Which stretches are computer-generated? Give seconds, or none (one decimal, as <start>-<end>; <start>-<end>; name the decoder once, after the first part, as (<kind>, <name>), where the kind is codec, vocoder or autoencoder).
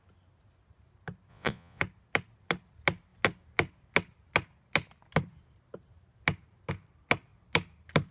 1.3-1.8 (vocoder, Vocos)